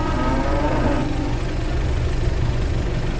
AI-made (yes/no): yes